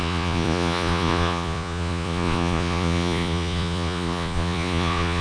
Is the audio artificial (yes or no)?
yes